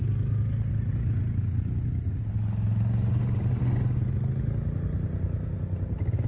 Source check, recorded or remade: recorded